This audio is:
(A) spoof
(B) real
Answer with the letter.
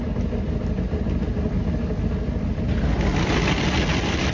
B